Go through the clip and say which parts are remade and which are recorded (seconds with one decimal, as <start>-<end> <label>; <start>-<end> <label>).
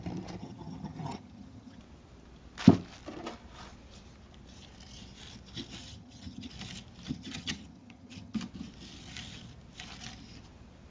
0.0-0.4 recorded; 0.4-1.8 remade; 1.8-5.8 recorded; 5.8-6.5 remade; 6.5-7.1 recorded; 7.1-8.4 remade; 8.4-10.9 recorded